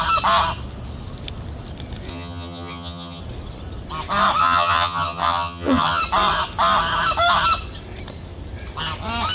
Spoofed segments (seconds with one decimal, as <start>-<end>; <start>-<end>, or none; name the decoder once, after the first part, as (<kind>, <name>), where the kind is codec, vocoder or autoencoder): 2.1-3.2 (vocoder, HiFi-GAN); 4.4-6.0